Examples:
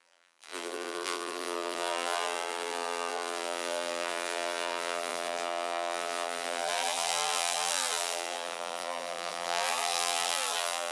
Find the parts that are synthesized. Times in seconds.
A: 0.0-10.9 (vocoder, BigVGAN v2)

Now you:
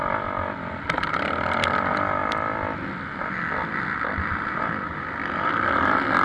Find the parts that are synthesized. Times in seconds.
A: none